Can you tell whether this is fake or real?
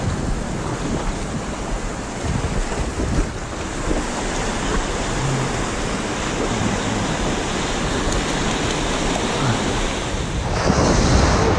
real